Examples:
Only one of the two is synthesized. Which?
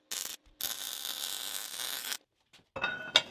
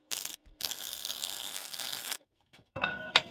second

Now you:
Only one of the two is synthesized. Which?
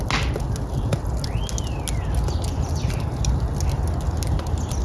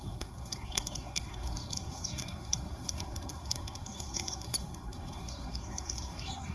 second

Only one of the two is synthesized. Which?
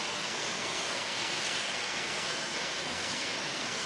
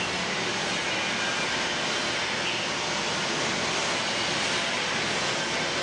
first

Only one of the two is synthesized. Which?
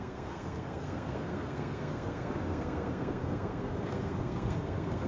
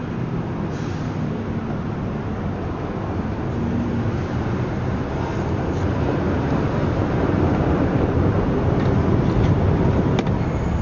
first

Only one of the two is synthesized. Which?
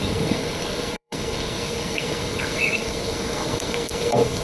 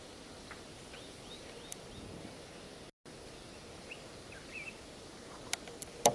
first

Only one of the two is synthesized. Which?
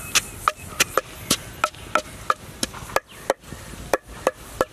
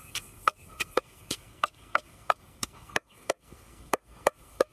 second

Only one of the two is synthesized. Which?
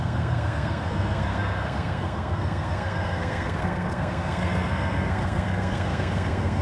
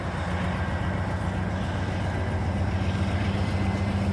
first